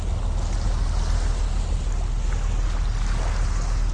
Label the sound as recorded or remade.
recorded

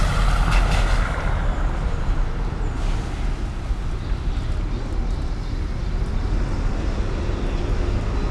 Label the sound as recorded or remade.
recorded